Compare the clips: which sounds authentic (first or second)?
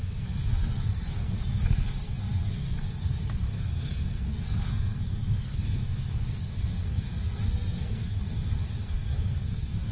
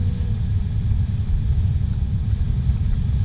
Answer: second